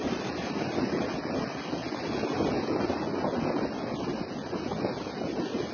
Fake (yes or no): no